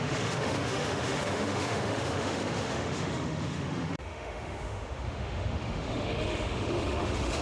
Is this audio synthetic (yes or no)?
yes